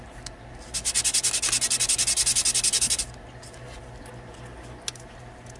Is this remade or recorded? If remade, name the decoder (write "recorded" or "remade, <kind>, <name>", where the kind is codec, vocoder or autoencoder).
recorded